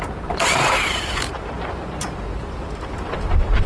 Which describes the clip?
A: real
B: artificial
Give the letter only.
B